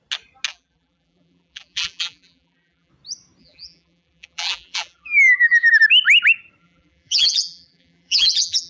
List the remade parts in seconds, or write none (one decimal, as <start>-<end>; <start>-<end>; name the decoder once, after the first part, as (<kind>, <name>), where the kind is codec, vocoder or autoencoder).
0.5-2.9 (vocoder, BigVGAN v2); 3.4-5.7; 6.6-8.7